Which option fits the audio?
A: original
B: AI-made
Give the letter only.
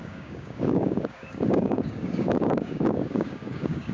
B